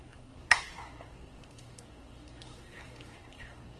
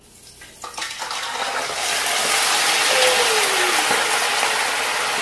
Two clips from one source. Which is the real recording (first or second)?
second